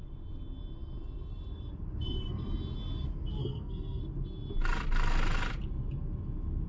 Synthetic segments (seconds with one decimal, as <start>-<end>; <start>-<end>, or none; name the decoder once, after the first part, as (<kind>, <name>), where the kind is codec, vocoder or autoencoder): 3.4-4.0 (codec, SNAC)